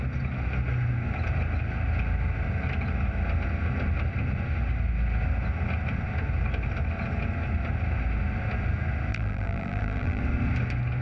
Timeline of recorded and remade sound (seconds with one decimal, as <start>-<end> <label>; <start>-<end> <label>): 0.0-9.1 recorded; 9.1-10.2 remade; 10.2-11.0 recorded